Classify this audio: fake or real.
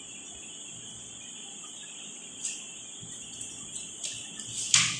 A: real